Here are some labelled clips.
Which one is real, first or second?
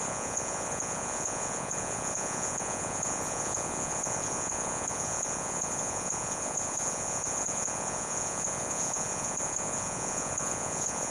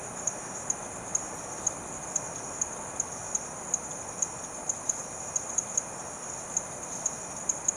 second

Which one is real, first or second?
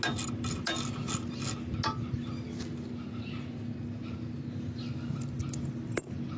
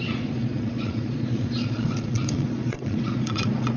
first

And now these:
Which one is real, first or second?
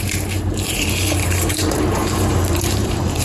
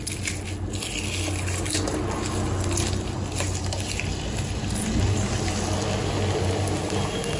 second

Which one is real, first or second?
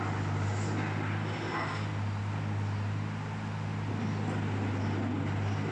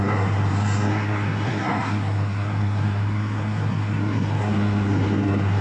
first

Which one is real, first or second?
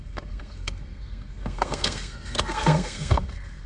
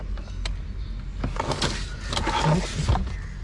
second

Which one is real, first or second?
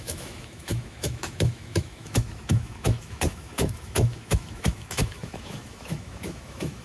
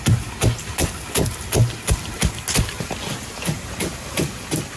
second